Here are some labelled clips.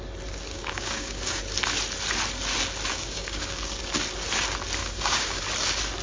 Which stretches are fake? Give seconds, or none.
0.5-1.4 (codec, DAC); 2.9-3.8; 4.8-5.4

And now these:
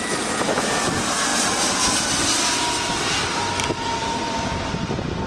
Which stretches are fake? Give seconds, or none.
4.0-4.7 (vocoder, BigVGAN v2)

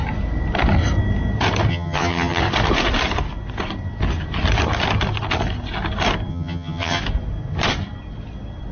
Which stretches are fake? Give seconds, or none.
1.7-2.4 (vocoder, HiFi-GAN); 6.3-7.0

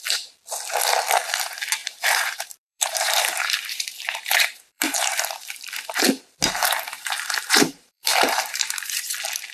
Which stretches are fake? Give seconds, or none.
1.8-5.8 (vocoder, BigVGAN v2); 6.6-9.1

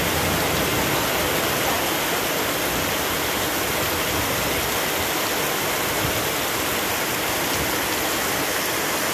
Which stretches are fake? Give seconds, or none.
none

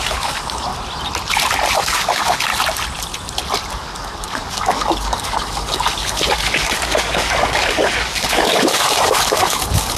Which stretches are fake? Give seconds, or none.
0.0-0.7 (codec, DAC); 1.8-2.5; 3.7-10.0